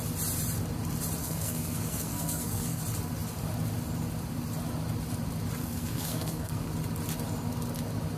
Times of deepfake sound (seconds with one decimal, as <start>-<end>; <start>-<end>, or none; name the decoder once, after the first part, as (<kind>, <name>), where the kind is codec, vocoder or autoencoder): 1.2-2.8 (codec, SNAC); 5.6-6.7